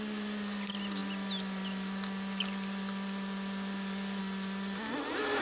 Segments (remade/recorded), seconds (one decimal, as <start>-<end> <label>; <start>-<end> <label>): 0.0-5.4 recorded